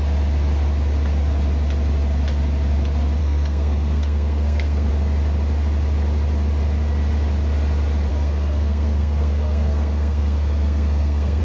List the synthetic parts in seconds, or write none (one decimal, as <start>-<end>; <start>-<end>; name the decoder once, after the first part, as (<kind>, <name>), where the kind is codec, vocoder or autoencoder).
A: 3.2-4.9 (codec, SNAC); 8.1-11.4